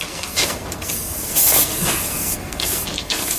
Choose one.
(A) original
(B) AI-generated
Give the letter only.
B